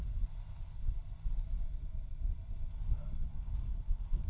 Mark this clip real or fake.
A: real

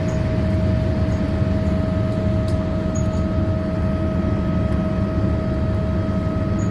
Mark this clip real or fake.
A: real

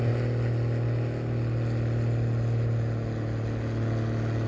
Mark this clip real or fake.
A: real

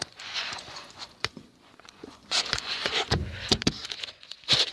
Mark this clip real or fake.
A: fake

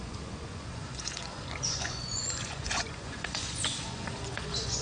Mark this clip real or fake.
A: fake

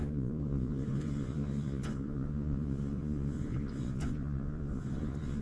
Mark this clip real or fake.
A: fake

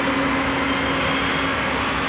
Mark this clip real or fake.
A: real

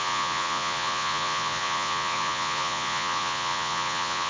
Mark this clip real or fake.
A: fake